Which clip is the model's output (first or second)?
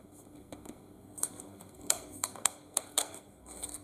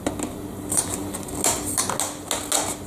first